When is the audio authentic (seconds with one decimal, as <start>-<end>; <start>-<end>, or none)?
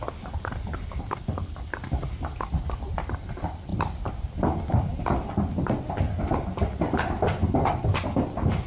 0.0-8.7